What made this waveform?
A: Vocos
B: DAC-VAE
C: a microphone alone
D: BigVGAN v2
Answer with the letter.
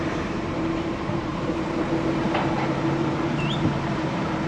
D